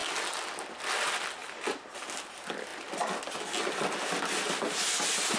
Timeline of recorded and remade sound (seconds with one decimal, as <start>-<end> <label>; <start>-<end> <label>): 0.0-5.4 recorded